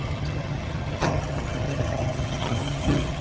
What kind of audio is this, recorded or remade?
remade